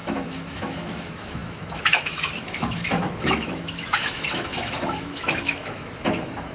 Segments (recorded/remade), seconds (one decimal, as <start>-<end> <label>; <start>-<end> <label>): 0.0-6.5 remade